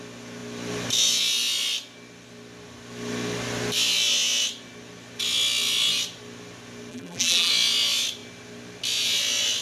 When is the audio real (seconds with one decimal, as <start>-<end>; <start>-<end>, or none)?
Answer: 0.0-6.9; 7.5-9.6